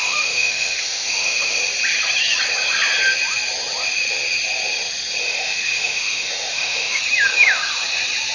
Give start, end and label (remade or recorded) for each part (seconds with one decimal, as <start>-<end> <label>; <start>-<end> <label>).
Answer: 0.0-1.6 remade; 1.6-5.2 recorded; 5.2-7.0 remade; 7.0-8.3 recorded